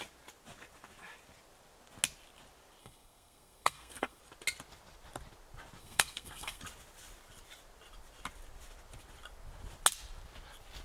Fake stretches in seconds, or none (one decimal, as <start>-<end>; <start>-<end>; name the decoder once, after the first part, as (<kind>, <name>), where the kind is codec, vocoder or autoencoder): 2.8-4.2 (codec, SNAC); 5.8-6.6